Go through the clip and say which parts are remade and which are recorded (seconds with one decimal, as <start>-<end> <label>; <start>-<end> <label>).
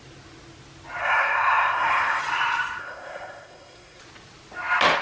0.0-1.0 recorded; 1.0-2.2 remade; 2.2-2.8 recorded; 2.8-4.0 remade; 4.0-5.0 recorded